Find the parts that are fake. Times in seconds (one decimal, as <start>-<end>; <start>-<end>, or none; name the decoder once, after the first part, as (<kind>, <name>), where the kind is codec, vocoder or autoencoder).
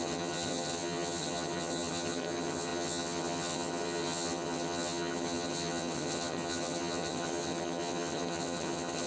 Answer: 0.0-9.1 (vocoder, HiFi-GAN)